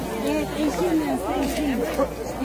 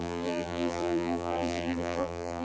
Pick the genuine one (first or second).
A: first